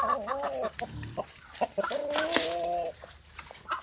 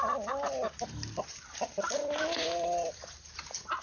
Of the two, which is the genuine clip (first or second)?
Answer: second